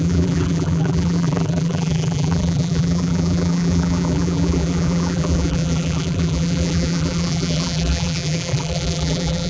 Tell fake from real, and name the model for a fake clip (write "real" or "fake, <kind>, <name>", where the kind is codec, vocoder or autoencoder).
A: fake, vocoder, BigVGAN v2